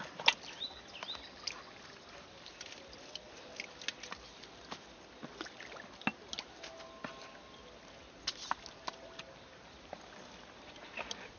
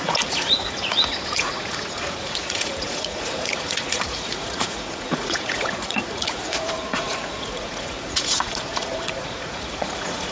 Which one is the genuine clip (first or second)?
first